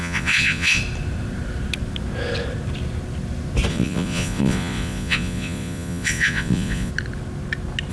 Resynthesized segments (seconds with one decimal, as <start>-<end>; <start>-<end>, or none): 0.0-0.8; 3.7-6.9

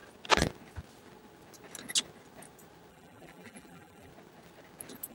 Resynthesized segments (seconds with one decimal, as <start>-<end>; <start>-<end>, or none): 2.9-4.1